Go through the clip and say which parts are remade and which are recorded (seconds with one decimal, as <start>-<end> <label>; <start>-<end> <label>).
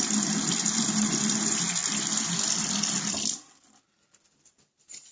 0.0-1.8 remade; 1.8-2.5 recorded; 2.5-5.1 remade